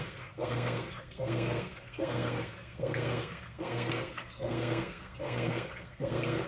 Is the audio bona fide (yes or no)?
no